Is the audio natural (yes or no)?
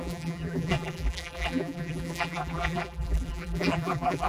no